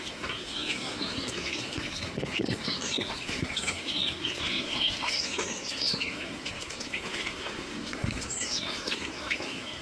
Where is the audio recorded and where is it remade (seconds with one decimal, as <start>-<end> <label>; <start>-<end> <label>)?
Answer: 0.0-9.8 remade

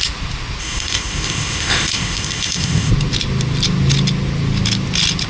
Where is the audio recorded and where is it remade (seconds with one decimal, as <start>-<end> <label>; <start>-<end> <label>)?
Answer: 0.0-0.6 recorded; 0.6-2.9 remade; 2.9-5.3 recorded

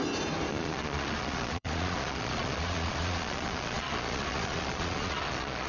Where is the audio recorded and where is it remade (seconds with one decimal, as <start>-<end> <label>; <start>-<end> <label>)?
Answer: 0.0-0.5 recorded; 0.5-5.7 remade